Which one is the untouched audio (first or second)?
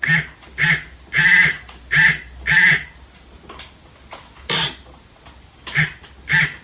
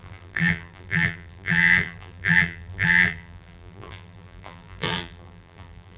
first